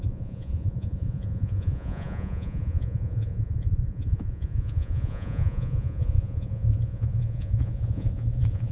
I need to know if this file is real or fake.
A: fake